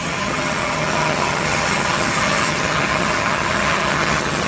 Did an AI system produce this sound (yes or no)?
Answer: yes